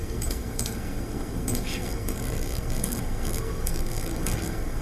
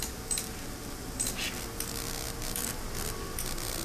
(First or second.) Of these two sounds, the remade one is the first